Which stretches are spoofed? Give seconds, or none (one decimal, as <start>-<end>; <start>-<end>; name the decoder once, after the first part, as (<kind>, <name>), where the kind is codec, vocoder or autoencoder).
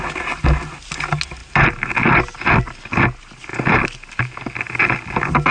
none